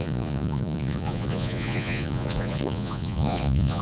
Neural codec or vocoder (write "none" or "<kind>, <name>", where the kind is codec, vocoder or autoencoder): vocoder, Vocos